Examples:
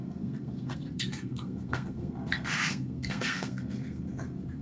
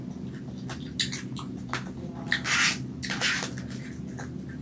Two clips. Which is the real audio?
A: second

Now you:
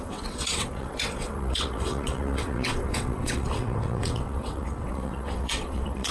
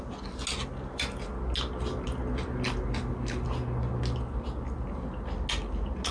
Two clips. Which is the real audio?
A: second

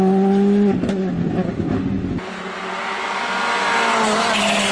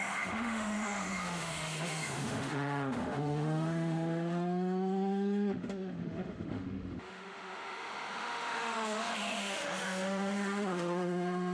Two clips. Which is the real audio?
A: first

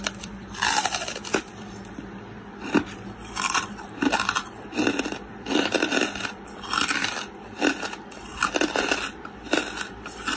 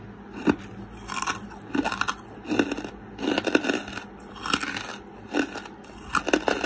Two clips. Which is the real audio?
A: second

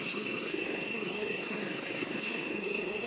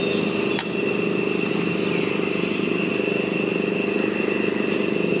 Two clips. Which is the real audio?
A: second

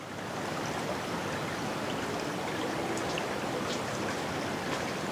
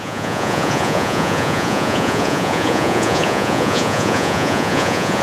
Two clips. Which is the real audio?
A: first